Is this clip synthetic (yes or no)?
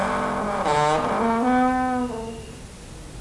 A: no